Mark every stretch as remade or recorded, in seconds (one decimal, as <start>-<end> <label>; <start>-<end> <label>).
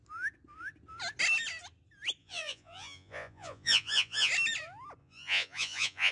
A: 0.0-2.2 recorded; 2.2-4.3 remade; 4.3-5.0 recorded; 5.0-6.1 remade